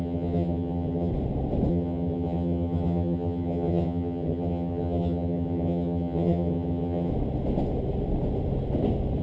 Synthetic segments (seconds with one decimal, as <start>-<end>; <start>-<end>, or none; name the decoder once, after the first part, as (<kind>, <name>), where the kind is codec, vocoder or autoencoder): 0.0-1.1 (vocoder, HiFi-GAN); 1.7-7.1